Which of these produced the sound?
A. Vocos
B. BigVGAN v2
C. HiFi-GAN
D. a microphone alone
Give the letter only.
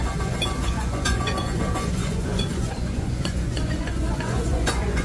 A